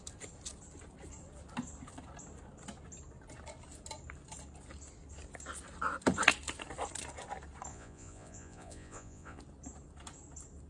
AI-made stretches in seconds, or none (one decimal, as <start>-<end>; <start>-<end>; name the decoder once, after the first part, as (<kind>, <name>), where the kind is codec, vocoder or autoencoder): 7.7-9.4 (vocoder, Vocos)